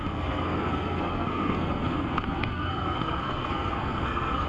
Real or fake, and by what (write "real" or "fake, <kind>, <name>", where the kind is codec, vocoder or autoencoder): fake, codec, SNAC